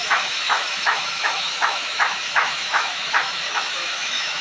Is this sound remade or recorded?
remade